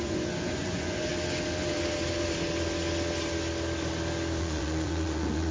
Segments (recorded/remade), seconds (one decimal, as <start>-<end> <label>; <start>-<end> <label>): 0.0-1.1 remade; 1.1-4.4 recorded; 4.4-5.5 remade